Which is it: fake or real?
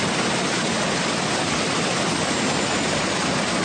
real